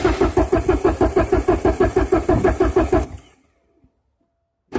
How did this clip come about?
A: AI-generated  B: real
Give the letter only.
B